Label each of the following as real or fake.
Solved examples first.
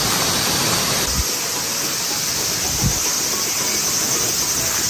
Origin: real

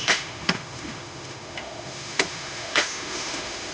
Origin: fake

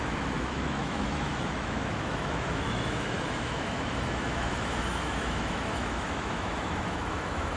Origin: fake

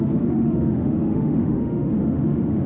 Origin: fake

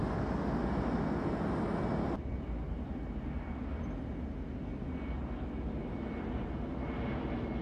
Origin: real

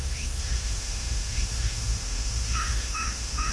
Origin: fake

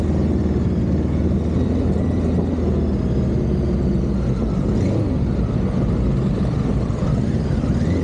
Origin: real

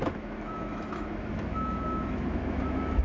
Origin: fake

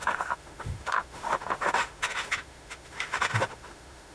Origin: fake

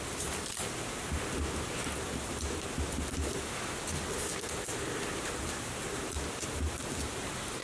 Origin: real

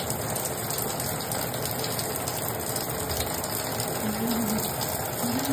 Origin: real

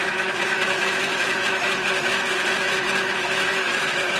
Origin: fake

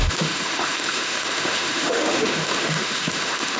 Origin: fake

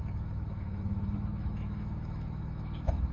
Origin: fake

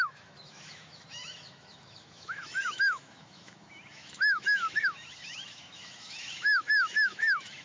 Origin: fake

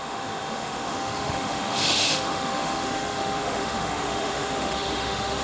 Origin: fake